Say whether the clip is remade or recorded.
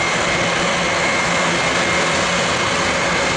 recorded